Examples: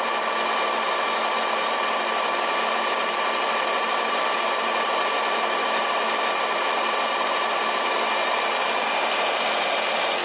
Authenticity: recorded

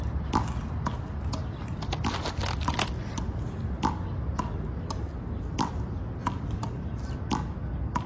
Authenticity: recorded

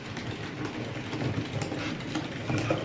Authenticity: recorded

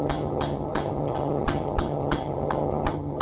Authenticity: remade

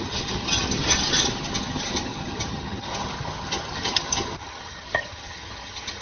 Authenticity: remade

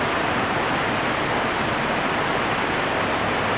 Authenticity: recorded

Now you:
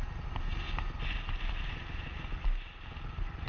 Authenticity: recorded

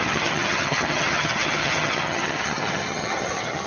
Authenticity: remade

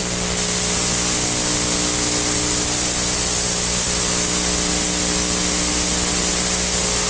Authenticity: recorded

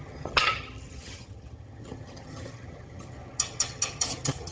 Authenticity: remade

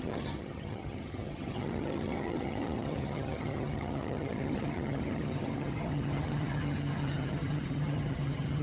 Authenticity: remade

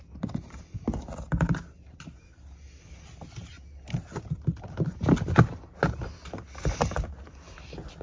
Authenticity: recorded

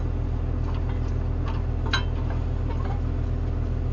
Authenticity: recorded